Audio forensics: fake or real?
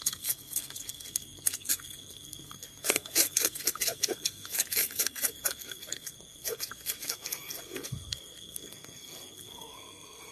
fake